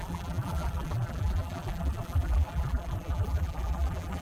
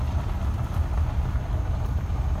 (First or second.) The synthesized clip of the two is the first